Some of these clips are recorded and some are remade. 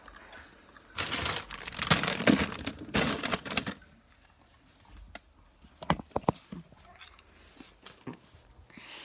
recorded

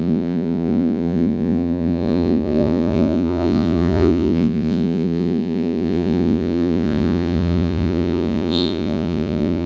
remade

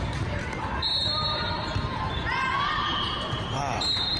remade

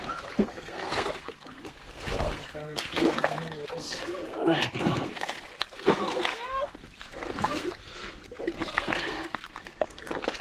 remade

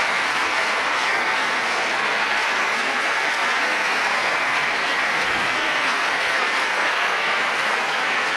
remade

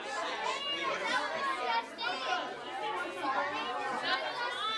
recorded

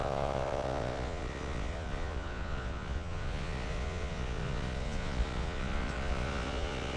remade